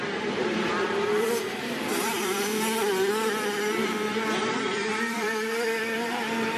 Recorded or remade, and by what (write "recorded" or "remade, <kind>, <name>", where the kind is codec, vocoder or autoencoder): remade, vocoder, BigVGAN v2